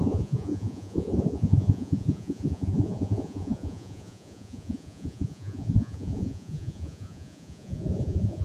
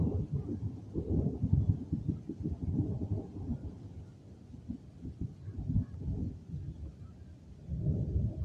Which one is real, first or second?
second